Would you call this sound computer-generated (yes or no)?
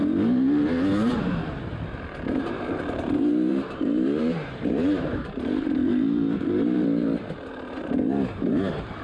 yes